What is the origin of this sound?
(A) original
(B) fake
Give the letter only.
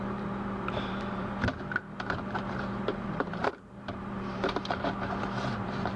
B